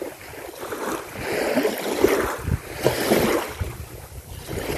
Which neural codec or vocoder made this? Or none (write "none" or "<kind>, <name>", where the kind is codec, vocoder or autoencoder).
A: none